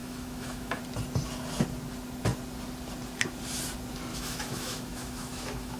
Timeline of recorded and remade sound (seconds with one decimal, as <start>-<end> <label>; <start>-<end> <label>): 0.0-0.8 remade; 0.8-4.1 recorded; 4.1-5.8 remade